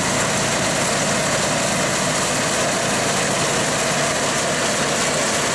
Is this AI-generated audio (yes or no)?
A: no